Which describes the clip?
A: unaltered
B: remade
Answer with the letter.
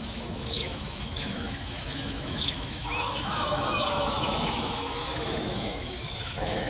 B